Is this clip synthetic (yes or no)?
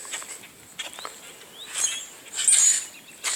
no